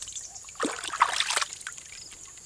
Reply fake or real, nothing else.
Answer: real